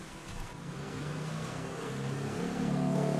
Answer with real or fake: fake